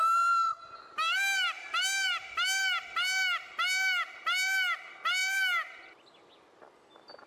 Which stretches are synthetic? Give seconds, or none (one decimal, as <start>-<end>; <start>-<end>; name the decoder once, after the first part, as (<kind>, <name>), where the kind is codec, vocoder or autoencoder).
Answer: none